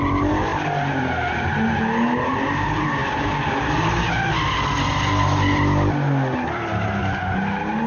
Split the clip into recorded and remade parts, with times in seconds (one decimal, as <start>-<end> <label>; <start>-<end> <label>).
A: 0.0-7.9 recorded